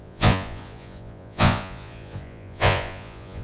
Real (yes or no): no